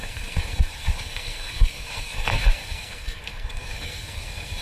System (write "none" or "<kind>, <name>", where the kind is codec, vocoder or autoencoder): codec, SNAC